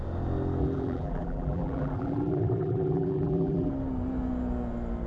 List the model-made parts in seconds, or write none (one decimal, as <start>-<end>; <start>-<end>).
0.6-3.7